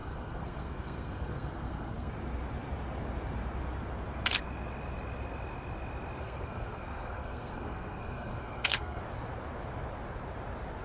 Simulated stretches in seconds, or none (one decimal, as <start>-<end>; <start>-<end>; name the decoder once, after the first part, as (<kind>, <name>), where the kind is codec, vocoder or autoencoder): 0.0-2.1 (codec, SNAC); 6.2-9.0